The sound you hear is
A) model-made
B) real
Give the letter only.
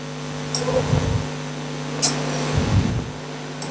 B